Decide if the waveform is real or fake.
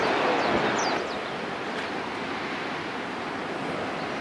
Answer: real